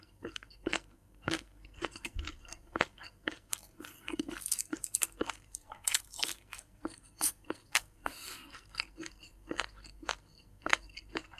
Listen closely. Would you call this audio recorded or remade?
remade